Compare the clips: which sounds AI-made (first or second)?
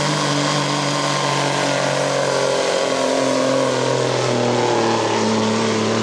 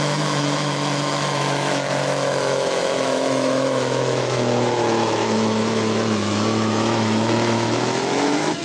second